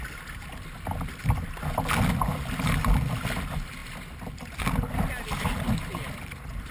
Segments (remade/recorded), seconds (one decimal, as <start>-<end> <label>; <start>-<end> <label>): 0.0-6.7 recorded